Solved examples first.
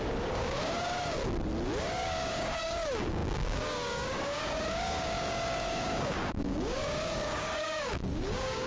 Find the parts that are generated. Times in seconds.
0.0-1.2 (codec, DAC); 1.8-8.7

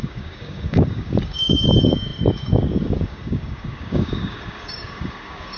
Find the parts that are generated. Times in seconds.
0.0-5.6 (codec, DAC)

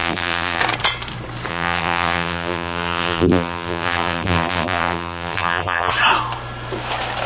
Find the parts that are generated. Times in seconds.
0.0-0.6 (vocoder, BigVGAN v2); 1.5-5.9